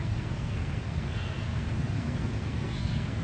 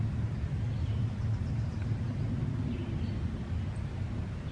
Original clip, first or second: second